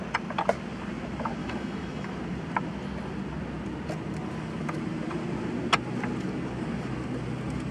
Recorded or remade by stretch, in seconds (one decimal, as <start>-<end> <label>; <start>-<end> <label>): 0.0-1.4 recorded; 1.4-2.1 remade; 2.1-7.7 recorded